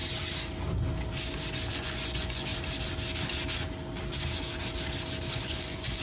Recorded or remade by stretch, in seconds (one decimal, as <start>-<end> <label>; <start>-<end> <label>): 0.0-1.7 recorded; 1.7-2.5 remade; 2.5-5.4 recorded; 5.4-6.0 remade